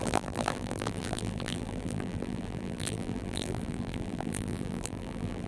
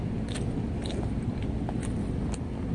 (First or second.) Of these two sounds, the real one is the second